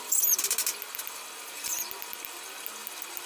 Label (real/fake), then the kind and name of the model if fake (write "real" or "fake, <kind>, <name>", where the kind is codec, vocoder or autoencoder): real